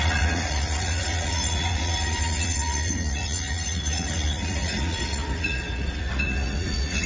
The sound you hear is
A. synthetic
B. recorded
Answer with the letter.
A